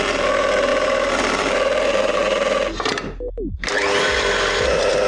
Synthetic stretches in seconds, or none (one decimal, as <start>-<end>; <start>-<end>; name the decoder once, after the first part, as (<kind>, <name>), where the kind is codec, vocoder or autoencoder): 0.0-2.2 (vocoder, BigVGAN v2); 4.0-5.1